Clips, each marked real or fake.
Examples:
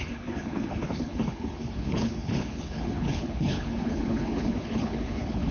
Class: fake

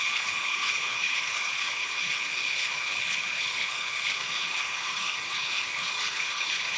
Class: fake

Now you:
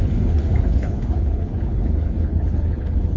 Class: fake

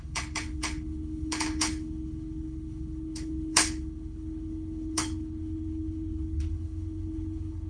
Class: fake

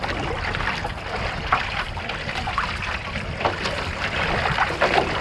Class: real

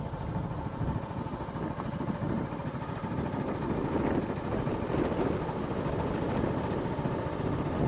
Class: real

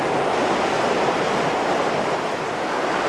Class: real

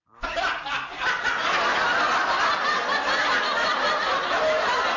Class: real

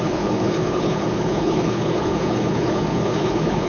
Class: fake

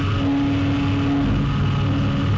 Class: real